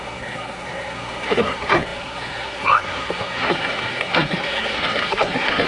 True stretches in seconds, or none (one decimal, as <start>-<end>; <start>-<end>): none